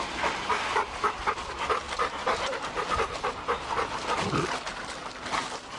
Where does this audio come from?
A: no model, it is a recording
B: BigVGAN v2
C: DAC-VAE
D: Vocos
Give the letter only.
B